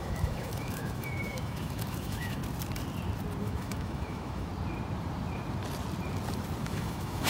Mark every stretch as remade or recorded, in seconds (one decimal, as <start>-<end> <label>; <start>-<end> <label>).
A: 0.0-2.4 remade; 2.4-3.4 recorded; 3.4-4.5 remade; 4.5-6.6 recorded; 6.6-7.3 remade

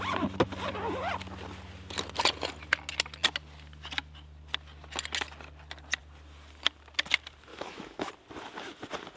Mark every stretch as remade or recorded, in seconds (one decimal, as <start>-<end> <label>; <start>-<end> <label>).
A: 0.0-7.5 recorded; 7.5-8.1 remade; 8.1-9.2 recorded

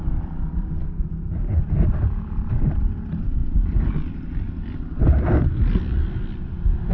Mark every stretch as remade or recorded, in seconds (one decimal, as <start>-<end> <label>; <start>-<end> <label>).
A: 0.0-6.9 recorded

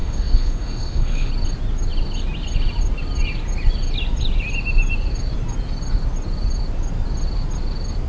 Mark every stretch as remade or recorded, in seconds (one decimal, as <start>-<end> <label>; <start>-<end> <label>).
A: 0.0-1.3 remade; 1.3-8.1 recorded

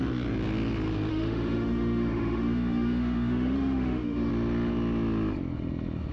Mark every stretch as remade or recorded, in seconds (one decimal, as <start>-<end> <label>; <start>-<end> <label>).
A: 0.0-1.1 recorded; 1.1-4.3 remade; 4.3-6.1 recorded

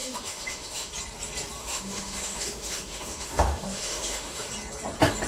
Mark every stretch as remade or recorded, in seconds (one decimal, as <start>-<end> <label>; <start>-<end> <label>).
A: 0.0-0.9 remade; 0.9-1.6 recorded; 1.6-4.5 remade; 4.5-5.3 recorded